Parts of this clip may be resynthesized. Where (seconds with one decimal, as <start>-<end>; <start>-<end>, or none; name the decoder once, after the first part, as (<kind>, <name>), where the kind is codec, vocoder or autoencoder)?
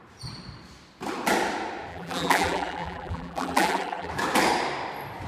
1.9-4.1 (vocoder, BigVGAN v2)